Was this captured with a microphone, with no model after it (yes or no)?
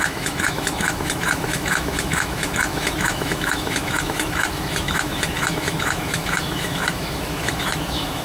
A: no